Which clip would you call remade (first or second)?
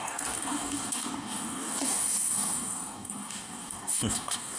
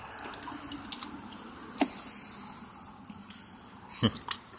first